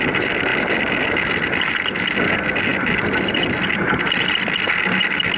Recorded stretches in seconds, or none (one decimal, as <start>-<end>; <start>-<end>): 0.0-5.4